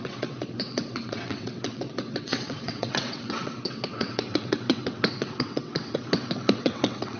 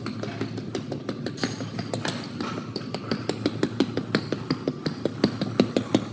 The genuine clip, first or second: second